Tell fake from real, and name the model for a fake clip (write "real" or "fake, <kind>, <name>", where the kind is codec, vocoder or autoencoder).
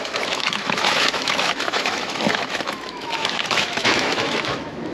fake, autoencoder, DAC-VAE